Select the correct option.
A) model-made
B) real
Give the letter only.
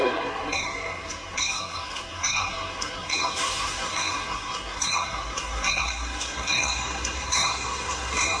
A